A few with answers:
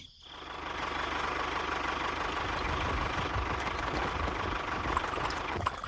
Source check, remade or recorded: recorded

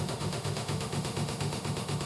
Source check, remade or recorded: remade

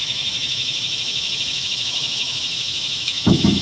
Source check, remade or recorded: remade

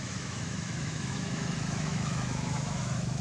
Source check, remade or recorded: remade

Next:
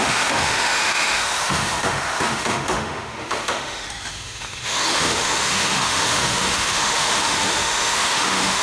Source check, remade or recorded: remade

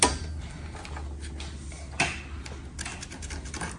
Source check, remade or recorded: recorded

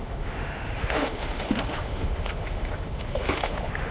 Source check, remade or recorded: remade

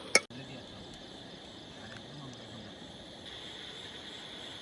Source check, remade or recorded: recorded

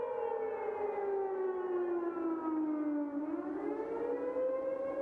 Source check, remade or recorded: recorded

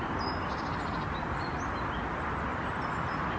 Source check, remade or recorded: recorded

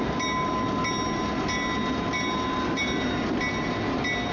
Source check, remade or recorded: recorded